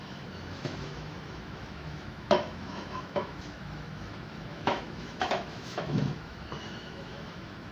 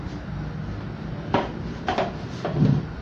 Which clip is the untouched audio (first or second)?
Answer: second